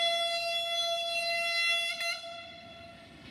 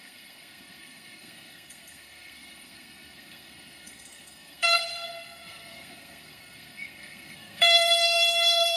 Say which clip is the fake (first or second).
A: second